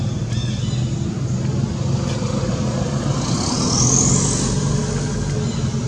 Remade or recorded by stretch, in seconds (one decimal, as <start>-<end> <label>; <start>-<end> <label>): 0.0-5.9 recorded